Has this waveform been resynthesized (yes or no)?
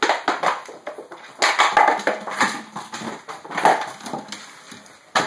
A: no